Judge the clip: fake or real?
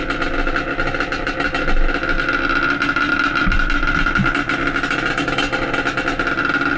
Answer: real